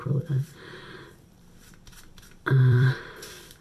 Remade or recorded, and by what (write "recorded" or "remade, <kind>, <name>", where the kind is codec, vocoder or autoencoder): remade, vocoder, BigVGAN v2